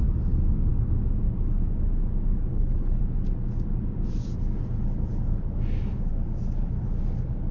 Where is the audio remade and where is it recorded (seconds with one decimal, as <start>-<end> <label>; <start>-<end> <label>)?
0.0-2.5 recorded; 2.5-3.0 remade; 3.0-7.5 recorded